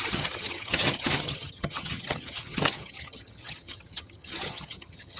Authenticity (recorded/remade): remade